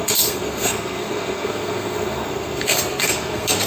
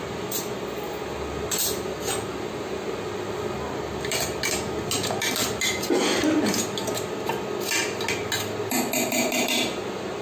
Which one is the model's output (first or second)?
first